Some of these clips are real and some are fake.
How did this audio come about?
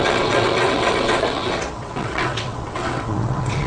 fake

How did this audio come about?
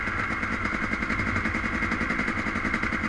real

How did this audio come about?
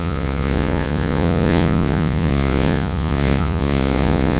fake